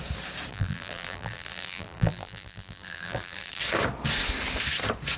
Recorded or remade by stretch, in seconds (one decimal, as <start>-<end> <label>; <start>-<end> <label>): 0.0-0.5 recorded; 0.5-3.6 remade; 3.6-5.2 recorded